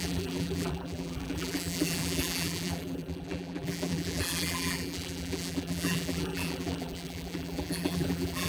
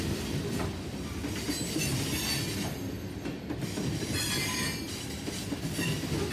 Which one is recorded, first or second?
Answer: second